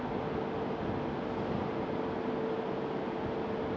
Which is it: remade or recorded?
recorded